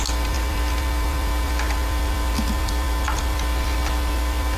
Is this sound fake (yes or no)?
yes